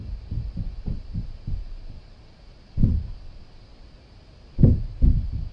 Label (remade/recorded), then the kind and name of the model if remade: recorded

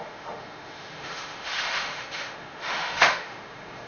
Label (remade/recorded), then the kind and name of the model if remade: remade, autoencoder, DAC-VAE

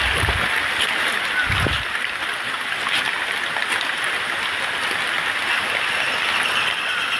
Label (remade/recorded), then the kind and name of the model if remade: recorded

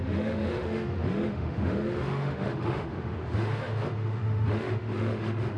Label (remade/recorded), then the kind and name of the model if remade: remade, autoencoder, DAC-VAE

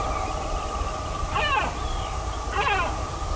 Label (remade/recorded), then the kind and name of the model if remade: recorded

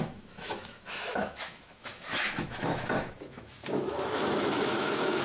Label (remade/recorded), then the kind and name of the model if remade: remade, autoencoder, DAC-VAE